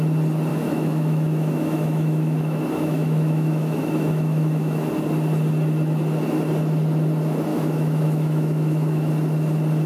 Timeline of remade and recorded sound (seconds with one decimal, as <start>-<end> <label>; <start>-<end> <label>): 0.0-0.5 recorded; 0.5-4.9 remade; 4.9-7.5 recorded; 7.5-9.1 remade; 9.1-9.9 recorded